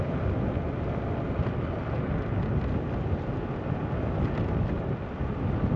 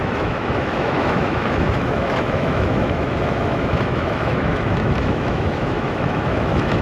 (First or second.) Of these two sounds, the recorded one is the first